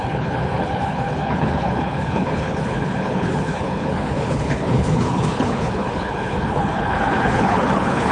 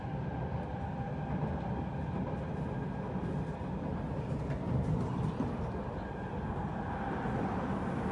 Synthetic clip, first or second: first